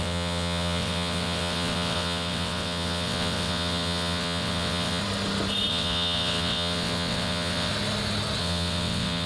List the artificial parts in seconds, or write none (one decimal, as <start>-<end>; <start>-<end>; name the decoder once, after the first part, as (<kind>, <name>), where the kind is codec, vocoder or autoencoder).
0.0-5.0 (vocoder, WaveNeXt); 5.7-7.7; 8.4-9.3